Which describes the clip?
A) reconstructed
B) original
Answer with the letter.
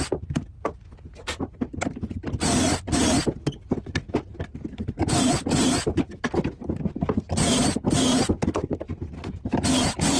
B